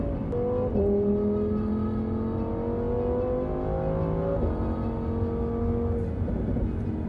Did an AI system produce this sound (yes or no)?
no